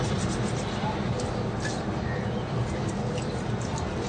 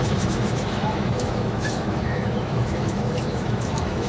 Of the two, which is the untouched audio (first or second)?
first